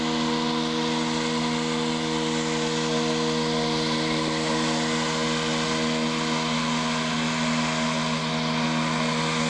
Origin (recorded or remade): recorded